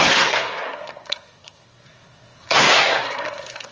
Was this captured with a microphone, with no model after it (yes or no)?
no